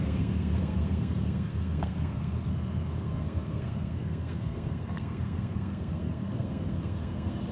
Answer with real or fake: fake